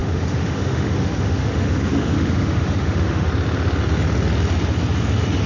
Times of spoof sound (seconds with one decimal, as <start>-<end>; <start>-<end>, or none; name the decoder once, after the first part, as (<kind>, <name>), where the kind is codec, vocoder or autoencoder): 0.0-3.3 (autoencoder, DAC-VAE)